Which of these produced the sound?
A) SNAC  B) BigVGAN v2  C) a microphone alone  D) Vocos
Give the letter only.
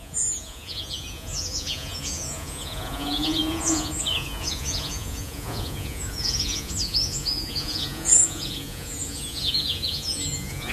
D